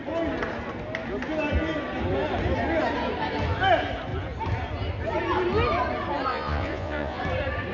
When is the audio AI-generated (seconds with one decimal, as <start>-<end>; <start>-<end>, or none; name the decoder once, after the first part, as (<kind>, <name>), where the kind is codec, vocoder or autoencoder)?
6.3-7.2 (vocoder, Vocos)